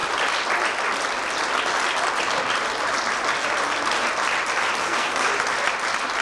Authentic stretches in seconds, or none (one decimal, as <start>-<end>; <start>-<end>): 0.0-4.8; 5.3-6.2